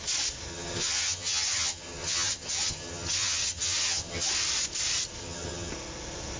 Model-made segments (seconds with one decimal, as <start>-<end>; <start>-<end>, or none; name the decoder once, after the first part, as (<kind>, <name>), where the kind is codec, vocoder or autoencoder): 0.5-4.3 (vocoder, HiFi-GAN); 5.2-5.7